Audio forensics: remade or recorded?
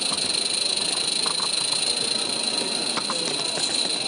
recorded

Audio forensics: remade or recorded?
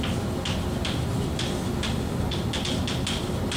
recorded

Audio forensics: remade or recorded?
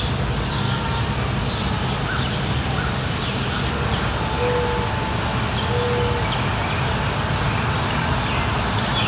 recorded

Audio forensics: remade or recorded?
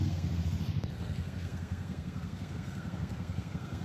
remade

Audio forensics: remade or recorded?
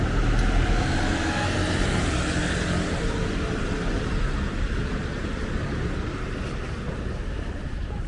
recorded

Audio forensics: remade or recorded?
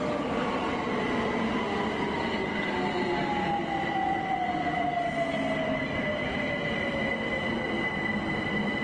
recorded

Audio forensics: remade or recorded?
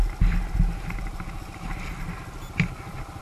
recorded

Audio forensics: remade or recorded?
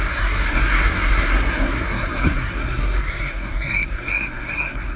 remade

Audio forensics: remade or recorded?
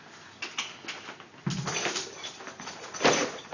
recorded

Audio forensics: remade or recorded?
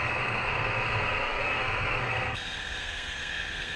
remade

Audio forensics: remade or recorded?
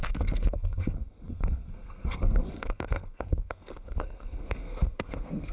remade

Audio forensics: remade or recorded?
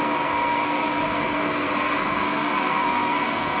remade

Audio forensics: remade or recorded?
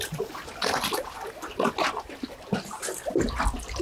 recorded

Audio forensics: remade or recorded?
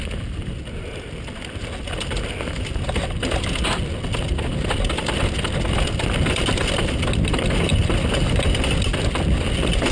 recorded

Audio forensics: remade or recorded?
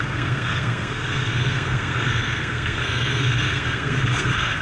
remade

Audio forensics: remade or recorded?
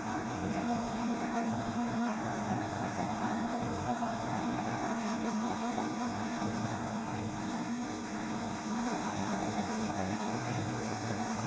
remade